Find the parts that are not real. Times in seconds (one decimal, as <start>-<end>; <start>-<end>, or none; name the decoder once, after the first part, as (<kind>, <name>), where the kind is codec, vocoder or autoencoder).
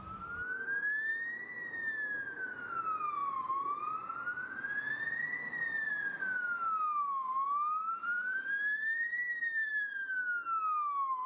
7.9-10.1 (vocoder, BigVGAN v2)